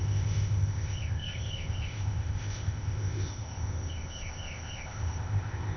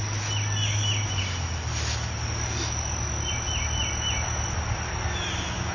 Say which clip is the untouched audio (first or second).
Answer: second